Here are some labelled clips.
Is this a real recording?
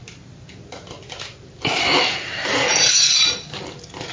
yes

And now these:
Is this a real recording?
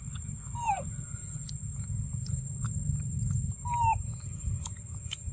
yes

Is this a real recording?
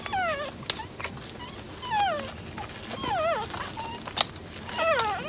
yes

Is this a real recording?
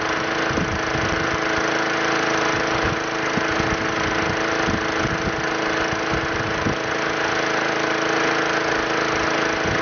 yes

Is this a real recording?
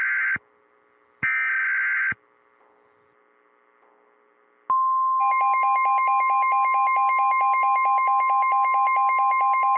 yes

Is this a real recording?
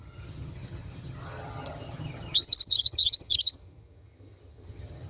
no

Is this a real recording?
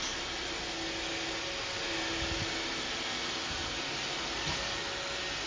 yes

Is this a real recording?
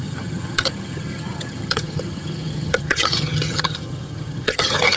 no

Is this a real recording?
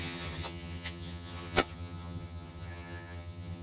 no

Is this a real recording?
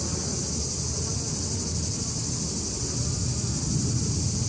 yes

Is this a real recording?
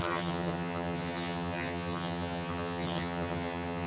no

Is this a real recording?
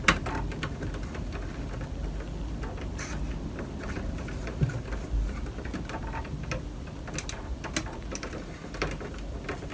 yes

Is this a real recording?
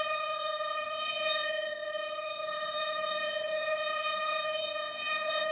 no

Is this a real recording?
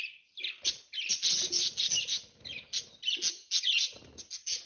yes